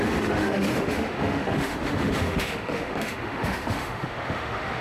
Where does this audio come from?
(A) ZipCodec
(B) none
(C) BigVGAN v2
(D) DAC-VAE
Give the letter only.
D